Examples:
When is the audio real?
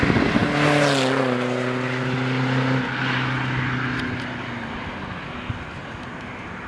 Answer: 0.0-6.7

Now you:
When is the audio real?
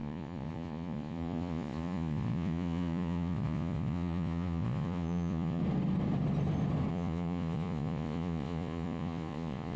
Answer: 5.6-6.9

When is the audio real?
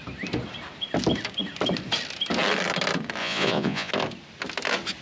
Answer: 0.0-3.2; 3.9-5.0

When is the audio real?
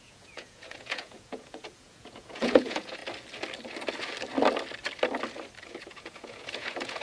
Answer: 3.0-5.6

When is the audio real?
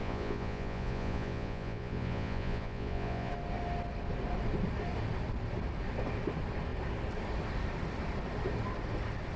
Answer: 3.3-9.4